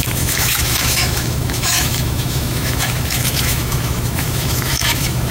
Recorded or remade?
remade